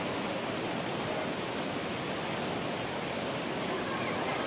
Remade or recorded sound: recorded